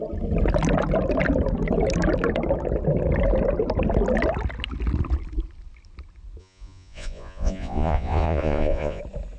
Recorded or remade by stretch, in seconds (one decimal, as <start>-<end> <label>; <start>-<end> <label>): 0.0-6.4 recorded; 6.4-9.0 remade; 9.0-9.4 recorded

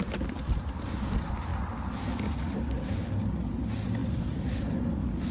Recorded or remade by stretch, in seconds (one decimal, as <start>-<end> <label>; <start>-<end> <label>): 0.0-4.0 recorded; 4.0-4.6 remade; 4.6-5.3 recorded

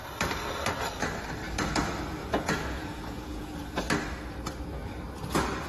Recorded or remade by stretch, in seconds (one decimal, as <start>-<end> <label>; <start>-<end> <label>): 0.0-2.2 recorded; 2.2-3.8 remade; 3.8-5.7 recorded

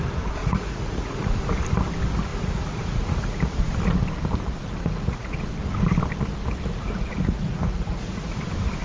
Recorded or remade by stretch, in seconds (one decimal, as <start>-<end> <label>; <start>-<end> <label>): 0.0-0.4 recorded; 0.4-1.3 remade; 1.3-2.3 recorded; 2.3-3.4 remade; 3.4-4.8 recorded; 4.8-5.5 remade; 5.5-6.7 recorded; 6.7-8.4 remade; 8.4-8.8 recorded

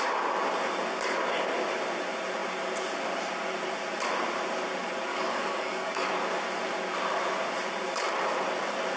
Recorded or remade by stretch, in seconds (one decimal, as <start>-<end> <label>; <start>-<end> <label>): 0.0-5.1 recorded; 5.1-6.1 remade; 6.1-9.0 recorded

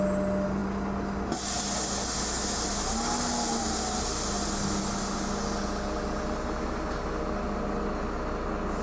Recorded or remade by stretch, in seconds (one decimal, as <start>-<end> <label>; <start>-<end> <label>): 0.0-8.8 recorded